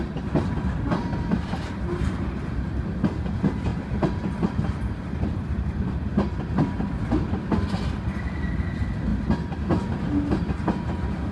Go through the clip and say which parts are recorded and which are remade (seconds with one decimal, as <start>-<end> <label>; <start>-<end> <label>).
0.0-3.7 recorded; 3.7-7.0 remade; 7.0-11.3 recorded